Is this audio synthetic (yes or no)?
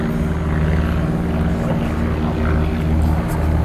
no